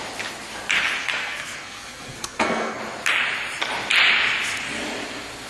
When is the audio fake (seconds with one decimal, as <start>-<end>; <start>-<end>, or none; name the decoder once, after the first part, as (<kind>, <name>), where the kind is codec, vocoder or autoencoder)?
1.0-2.8 (codec, SNAC)